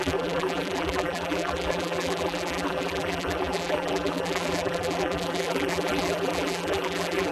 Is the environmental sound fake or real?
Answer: fake